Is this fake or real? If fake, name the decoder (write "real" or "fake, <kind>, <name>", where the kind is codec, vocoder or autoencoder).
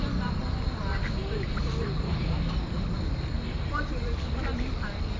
real